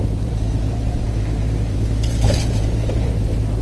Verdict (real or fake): fake